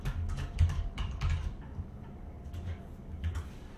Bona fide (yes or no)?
no